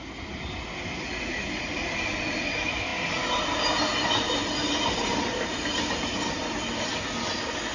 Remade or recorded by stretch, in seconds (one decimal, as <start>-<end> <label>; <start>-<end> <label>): 0.0-7.7 recorded